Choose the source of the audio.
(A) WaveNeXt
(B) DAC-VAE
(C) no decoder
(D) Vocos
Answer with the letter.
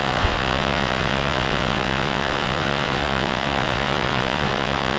A